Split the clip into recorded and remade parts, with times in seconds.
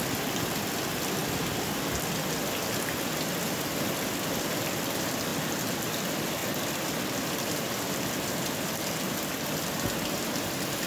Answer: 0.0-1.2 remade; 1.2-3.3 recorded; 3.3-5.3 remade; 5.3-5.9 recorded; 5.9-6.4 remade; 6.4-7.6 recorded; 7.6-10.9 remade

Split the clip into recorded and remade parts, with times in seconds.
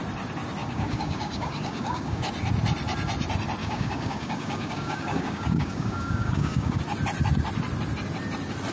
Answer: 0.0-0.6 recorded; 0.6-2.3 remade; 2.3-3.6 recorded; 3.6-6.8 remade; 6.8-8.7 recorded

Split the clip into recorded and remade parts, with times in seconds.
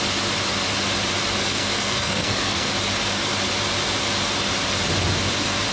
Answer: 0.0-1.4 recorded; 1.4-2.7 remade; 2.7-5.7 recorded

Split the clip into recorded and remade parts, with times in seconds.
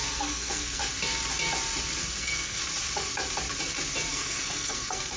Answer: 0.0-0.8 remade; 0.8-2.0 recorded; 2.0-2.6 remade; 2.6-4.1 recorded; 4.1-5.2 remade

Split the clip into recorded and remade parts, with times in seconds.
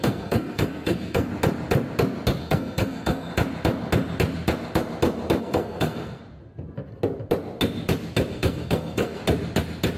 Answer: 0.0-1.3 remade; 1.3-2.4 recorded; 2.4-3.3 remade; 3.3-5.4 recorded; 5.4-6.2 remade; 6.2-8.3 recorded; 8.3-9.2 remade; 9.2-10.0 recorded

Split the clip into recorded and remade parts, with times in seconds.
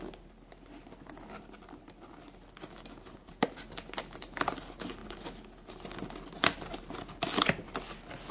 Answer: 0.0-8.3 recorded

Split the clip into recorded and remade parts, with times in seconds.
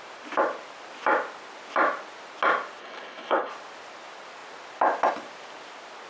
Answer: 0.0-2.8 recorded; 2.8-3.5 remade; 3.5-6.1 recorded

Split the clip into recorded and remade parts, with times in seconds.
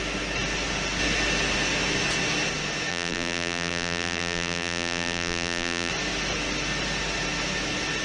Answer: 0.0-2.9 recorded; 2.9-5.9 remade; 5.9-8.0 recorded